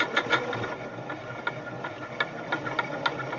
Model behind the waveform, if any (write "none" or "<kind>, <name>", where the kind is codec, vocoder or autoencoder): none